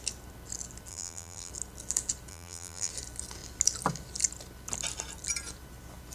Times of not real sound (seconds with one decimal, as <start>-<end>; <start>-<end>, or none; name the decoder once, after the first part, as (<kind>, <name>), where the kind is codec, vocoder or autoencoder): 0.9-1.5 (vocoder, BigVGAN v2); 2.3-2.9